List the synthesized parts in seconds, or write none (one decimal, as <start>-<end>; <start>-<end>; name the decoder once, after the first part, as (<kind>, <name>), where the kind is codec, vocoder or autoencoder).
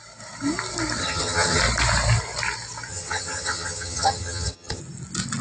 1.0-1.6 (vocoder, HiFi-GAN); 2.9-4.8